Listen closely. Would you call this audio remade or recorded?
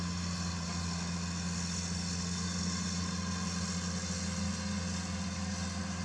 recorded